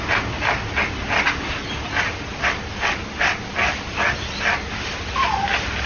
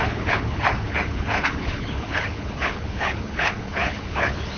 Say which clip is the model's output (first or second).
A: second